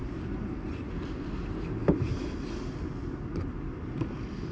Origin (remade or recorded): recorded